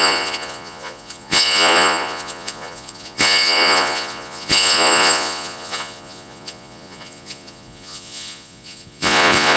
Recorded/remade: remade